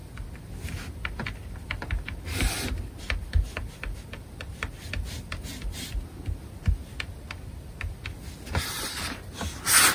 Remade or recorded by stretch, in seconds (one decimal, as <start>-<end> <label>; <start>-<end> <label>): 0.0-9.9 recorded